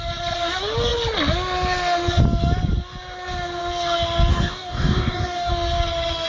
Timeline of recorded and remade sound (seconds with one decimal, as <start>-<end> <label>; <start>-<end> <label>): 0.0-4.3 recorded; 4.3-5.5 remade; 5.5-6.3 recorded